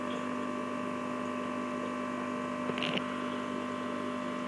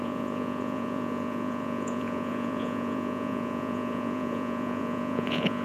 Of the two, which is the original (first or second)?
first